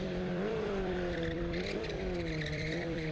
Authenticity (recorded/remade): remade